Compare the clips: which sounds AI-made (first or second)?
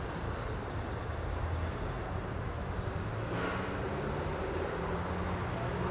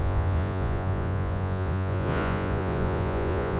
second